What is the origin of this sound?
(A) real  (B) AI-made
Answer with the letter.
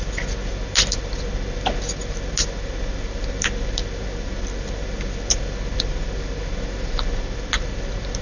A